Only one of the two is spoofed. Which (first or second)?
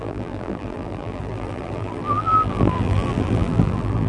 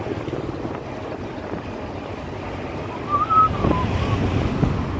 first